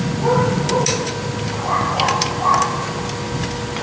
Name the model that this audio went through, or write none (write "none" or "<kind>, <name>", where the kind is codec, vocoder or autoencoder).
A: none